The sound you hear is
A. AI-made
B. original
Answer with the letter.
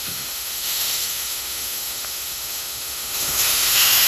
A